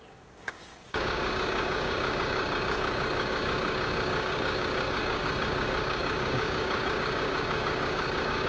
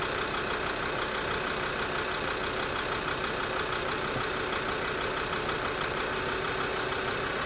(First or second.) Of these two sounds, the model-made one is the first